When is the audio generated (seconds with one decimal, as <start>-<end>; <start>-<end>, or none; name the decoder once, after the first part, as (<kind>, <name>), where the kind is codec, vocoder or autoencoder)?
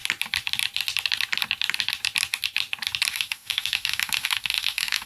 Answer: 3.1-5.1 (autoencoder, DAC-VAE)